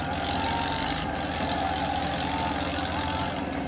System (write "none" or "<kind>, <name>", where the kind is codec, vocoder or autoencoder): none